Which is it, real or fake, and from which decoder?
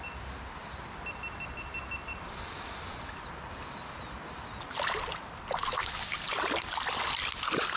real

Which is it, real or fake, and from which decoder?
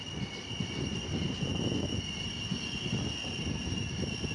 real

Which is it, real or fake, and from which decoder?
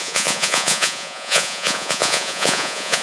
fake, vocoder, Vocos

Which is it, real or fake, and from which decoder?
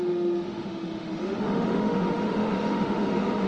fake, autoencoder, DAC-VAE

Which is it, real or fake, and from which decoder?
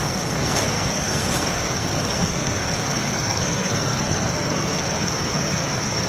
fake, codec, SNAC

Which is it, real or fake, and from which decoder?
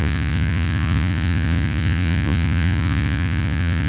fake, vocoder, Vocos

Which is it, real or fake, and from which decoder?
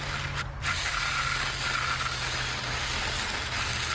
real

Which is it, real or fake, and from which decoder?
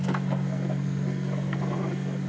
fake, codec, SNAC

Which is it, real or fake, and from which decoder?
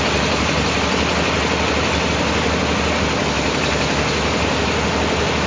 real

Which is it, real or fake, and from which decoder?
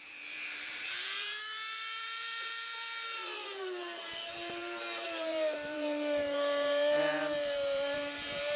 fake, vocoder, BigVGAN v2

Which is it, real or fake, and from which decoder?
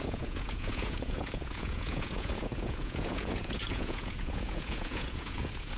fake, vocoder, Vocos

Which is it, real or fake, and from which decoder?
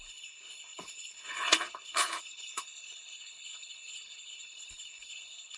fake, codec, HILCodec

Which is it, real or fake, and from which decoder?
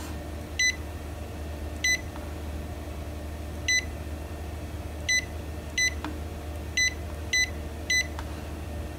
real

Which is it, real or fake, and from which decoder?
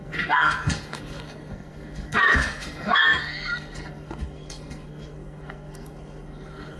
fake, codec, SNAC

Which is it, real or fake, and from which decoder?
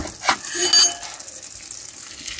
real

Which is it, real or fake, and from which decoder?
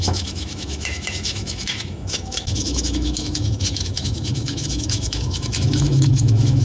fake, autoencoder, DAC-VAE